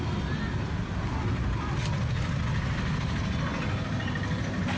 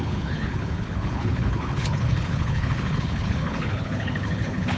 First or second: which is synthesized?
second